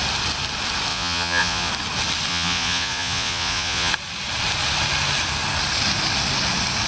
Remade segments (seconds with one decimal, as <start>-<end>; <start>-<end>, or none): 0.9-1.7; 2.3-3.9